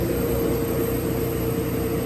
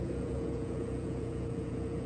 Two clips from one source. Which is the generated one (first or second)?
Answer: second